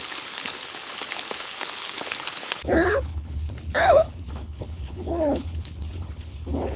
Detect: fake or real fake